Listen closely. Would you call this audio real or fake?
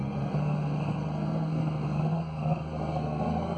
fake